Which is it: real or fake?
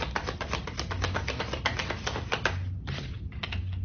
real